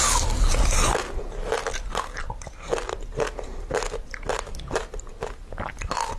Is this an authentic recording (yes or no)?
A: yes